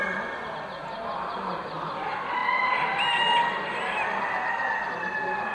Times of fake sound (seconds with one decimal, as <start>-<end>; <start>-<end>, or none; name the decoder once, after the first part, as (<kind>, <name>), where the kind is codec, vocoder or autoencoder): 0.8-1.5 (vocoder, BigVGAN v2)